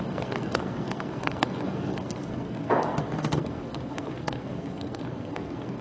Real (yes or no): no